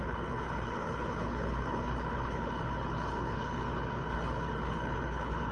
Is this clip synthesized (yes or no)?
yes